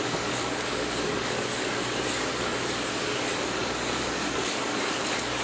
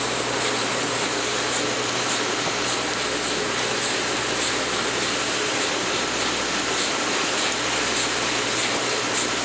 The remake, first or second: first